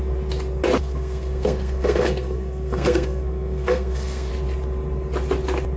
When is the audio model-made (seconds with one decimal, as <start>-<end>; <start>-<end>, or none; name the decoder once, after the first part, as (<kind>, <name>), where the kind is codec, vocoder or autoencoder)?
0.8-4.3 (codec, SNAC)